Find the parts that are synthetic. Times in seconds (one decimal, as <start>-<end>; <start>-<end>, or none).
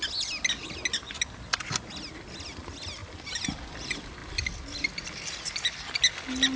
none